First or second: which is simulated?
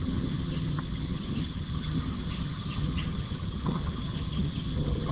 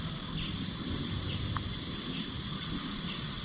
first